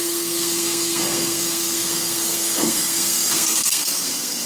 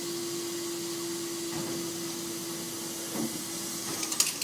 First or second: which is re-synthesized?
first